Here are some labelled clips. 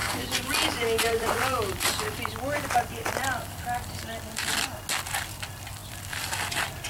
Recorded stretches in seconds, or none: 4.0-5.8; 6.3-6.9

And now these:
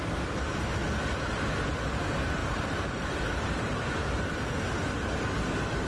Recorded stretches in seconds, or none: 0.0-2.4; 4.2-5.9

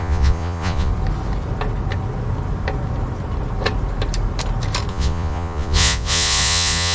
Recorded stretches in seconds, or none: 0.9-4.9

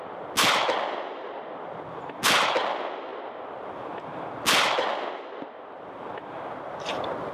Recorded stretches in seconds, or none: 0.0-7.3

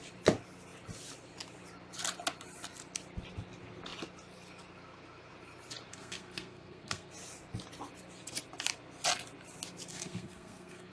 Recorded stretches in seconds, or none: 0.0-5.9; 7.1-9.9